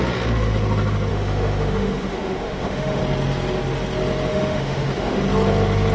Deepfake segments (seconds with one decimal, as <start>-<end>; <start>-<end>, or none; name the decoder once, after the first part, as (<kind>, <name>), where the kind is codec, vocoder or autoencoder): 1.1-3.0 (autoencoder, DAC-VAE); 4.3-5.2